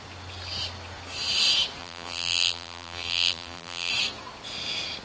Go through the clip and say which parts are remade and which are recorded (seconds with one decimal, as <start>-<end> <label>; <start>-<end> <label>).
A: 0.0-1.8 recorded; 1.8-3.9 remade; 3.9-5.0 recorded